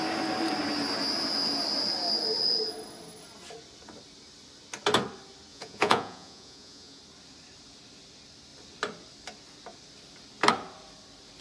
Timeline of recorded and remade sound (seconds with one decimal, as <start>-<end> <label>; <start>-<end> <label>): 0.0-5.5 recorded; 5.5-7.0 remade; 7.0-11.4 recorded